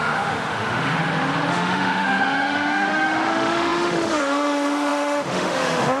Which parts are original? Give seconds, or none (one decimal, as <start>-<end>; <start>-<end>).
1.0-1.5